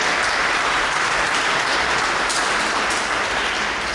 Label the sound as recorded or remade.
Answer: remade